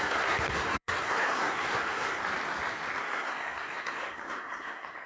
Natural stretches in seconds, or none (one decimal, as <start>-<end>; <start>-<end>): 2.2-3.0